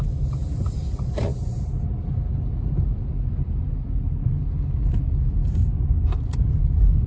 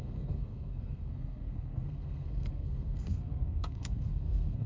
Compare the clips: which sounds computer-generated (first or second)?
second